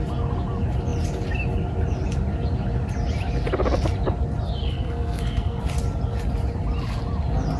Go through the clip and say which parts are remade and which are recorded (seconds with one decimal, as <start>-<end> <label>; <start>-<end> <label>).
0.0-4.6 recorded; 4.6-5.6 remade; 5.6-7.6 recorded